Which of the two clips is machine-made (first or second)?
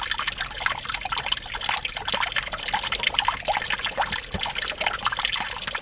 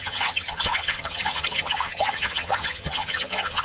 second